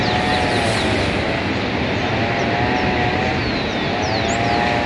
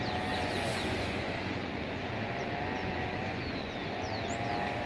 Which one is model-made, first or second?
second